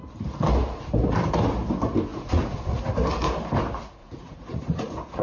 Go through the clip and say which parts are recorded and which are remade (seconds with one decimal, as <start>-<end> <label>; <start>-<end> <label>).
0.0-2.1 recorded; 2.1-2.8 remade; 2.8-4.0 recorded; 4.0-5.2 remade